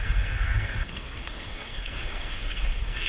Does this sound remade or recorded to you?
remade